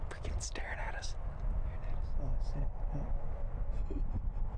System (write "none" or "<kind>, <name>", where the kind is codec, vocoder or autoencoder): none